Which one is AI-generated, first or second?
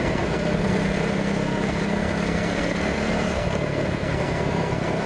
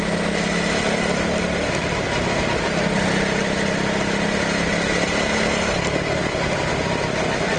first